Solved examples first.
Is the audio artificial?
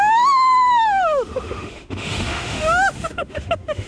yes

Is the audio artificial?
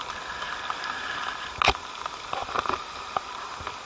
no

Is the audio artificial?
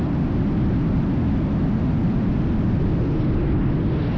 yes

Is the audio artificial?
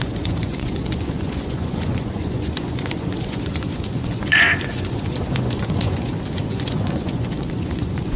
yes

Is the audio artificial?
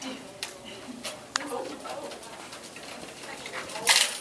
no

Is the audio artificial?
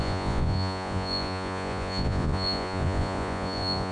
yes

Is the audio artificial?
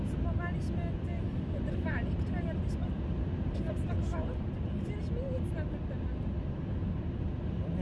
no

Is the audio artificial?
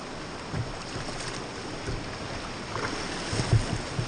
no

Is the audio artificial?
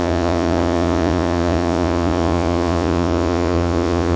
yes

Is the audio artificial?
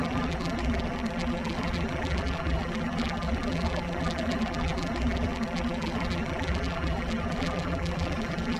yes